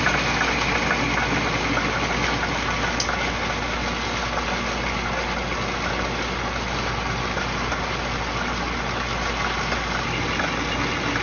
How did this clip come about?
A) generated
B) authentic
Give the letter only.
B